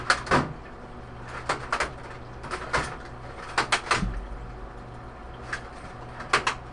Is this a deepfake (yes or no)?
no